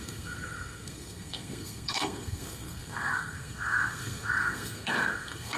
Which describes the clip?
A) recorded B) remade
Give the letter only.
B